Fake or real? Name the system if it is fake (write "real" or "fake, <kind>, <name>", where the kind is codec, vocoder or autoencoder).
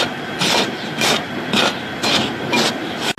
real